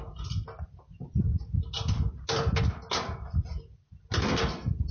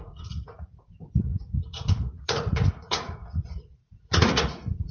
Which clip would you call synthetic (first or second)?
second